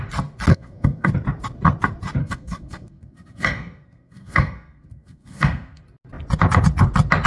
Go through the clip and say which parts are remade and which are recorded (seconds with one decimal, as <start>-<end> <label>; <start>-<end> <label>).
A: 0.0-0.5 recorded; 0.5-1.1 remade; 1.1-2.2 recorded; 2.2-5.8 remade; 5.8-7.3 recorded